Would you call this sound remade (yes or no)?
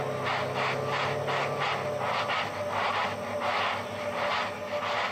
no